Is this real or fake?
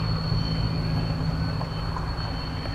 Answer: real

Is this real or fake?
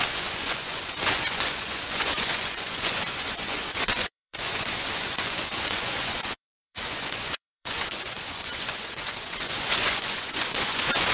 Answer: fake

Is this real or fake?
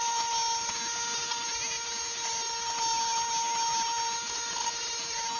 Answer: real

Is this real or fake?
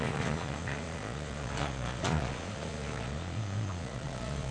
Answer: fake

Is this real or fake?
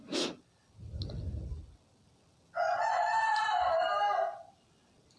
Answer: real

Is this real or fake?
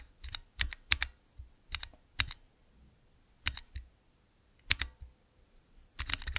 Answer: real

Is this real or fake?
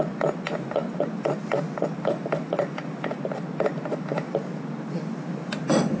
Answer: real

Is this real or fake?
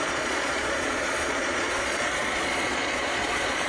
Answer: fake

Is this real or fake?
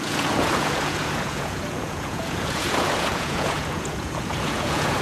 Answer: fake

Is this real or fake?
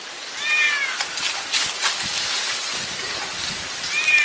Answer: real